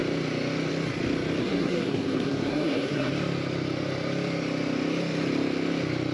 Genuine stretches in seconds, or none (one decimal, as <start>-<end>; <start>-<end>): 0.0-1.4; 3.1-6.1